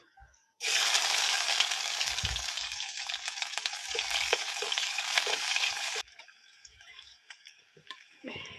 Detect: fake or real fake